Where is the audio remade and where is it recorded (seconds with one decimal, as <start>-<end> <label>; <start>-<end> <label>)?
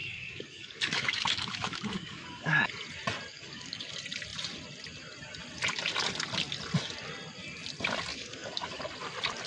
0.0-2.7 remade; 2.7-3.3 recorded; 3.3-3.9 remade; 3.9-8.1 recorded; 8.1-8.8 remade; 8.8-9.5 recorded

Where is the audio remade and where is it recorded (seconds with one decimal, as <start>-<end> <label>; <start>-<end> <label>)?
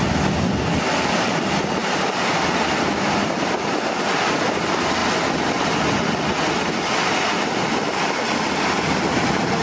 0.0-1.8 recorded; 1.8-3.7 remade; 3.7-9.6 recorded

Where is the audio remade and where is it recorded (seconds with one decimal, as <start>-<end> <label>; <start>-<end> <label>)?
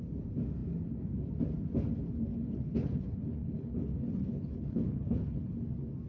0.0-2.3 recorded; 2.3-5.5 remade; 5.5-6.1 recorded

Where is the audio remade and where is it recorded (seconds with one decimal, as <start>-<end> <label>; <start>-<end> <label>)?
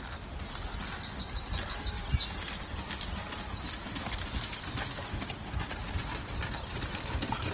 0.0-5.8 recorded; 5.8-6.6 remade; 6.6-7.5 recorded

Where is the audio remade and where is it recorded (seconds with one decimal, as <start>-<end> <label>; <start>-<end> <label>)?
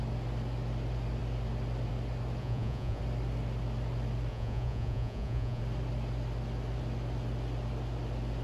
0.0-2.4 recorded; 2.4-3.0 remade; 3.0-4.3 recorded; 4.3-5.6 remade; 5.6-8.4 recorded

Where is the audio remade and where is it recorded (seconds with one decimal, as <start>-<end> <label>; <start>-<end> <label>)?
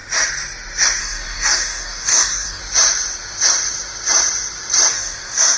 0.0-1.0 recorded; 1.0-2.6 remade; 2.6-4.9 recorded; 4.9-5.6 remade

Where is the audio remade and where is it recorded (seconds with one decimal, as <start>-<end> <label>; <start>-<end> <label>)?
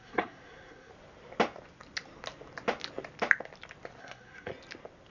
0.0-0.9 remade; 0.9-4.0 recorded; 4.0-4.5 remade; 4.5-5.1 recorded